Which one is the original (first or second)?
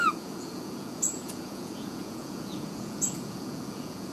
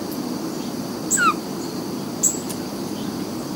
second